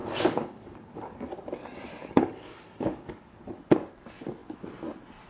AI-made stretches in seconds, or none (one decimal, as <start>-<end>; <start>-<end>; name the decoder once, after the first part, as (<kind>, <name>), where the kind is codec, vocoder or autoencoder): 0.0-1.3 (codec, DAC); 2.0-3.6